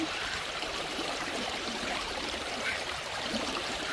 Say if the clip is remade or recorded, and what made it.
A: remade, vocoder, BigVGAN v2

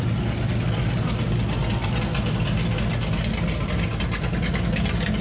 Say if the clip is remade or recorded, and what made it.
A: recorded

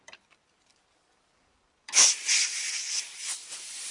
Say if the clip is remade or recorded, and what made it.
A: remade, vocoder, BigVGAN v2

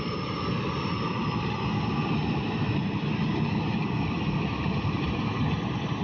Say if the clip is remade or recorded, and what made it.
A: recorded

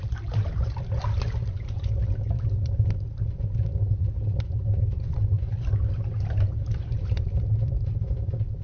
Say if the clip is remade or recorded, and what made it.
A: remade, vocoder, BigVGAN v2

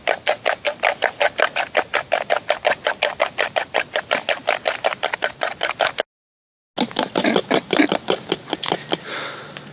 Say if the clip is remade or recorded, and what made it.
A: recorded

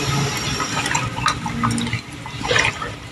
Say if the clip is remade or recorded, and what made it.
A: remade, vocoder, BigVGAN v2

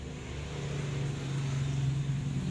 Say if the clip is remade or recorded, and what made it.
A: recorded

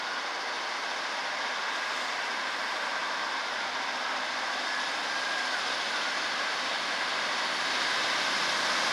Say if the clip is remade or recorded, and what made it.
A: recorded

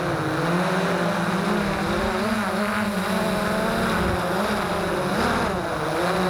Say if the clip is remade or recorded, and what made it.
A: recorded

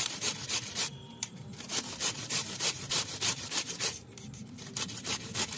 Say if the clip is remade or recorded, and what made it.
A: remade, vocoder, BigVGAN v2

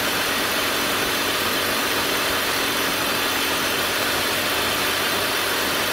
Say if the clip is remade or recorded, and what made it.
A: remade, vocoder, BigVGAN v2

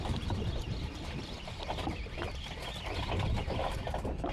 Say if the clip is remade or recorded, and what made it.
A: remade, vocoder, BigVGAN v2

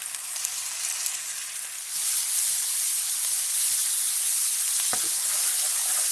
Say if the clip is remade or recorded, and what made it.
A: recorded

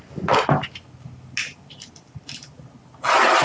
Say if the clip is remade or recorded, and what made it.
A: recorded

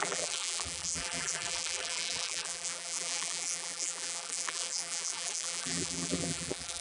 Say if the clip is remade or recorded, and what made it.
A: remade, vocoder, BigVGAN v2